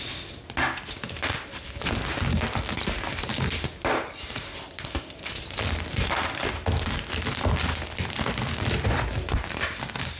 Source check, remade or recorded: recorded